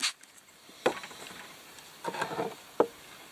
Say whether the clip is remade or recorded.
recorded